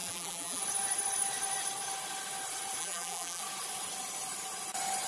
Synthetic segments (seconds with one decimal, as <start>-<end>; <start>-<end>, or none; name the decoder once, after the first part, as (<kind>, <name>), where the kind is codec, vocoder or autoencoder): 0.0-0.6 (vocoder, BigVGAN v2); 2.8-3.4